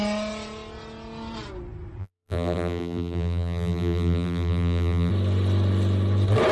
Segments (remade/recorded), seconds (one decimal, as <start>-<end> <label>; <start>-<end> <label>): 0.0-2.0 recorded; 2.0-5.1 remade; 5.1-6.5 recorded